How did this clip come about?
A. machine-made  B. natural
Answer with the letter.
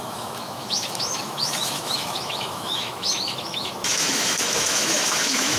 A